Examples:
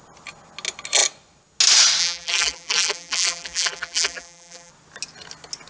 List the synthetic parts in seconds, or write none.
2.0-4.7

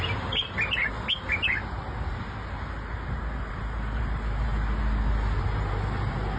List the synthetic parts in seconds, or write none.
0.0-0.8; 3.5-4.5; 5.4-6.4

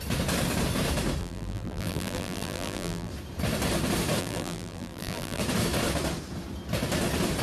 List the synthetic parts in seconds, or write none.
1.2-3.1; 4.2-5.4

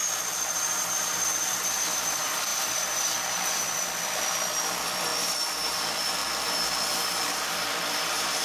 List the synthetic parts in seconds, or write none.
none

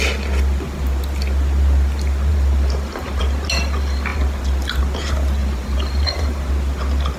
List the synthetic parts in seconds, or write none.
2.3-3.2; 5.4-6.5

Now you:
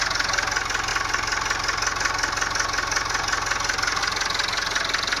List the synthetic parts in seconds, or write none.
none

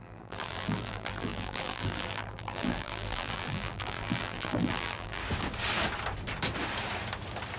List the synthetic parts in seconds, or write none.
0.0-5.2